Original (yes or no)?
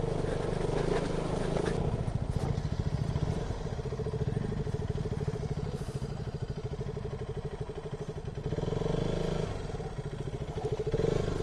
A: yes